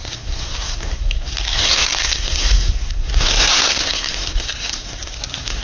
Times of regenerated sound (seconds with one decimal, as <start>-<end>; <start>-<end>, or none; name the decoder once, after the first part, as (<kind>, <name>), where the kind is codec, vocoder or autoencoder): 0.0-5.6 (codec, SNAC)